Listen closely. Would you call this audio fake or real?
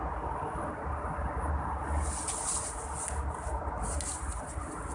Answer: real